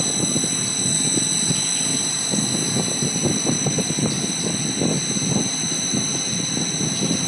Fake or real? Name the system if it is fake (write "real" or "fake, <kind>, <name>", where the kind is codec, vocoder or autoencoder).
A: real